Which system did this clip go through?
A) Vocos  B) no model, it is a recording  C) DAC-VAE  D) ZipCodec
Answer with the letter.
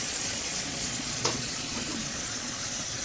A